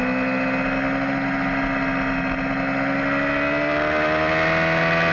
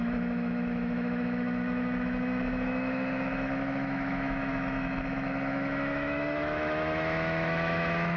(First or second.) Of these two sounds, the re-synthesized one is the second